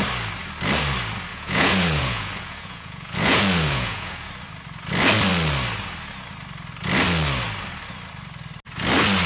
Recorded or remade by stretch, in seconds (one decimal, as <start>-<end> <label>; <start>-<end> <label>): 0.0-1.3 recorded; 1.3-4.3 remade; 4.3-9.3 recorded